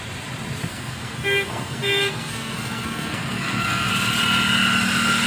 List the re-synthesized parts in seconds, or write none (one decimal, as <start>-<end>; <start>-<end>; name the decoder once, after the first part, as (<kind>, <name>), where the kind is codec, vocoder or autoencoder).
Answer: 0.7-3.9 (codec, SNAC)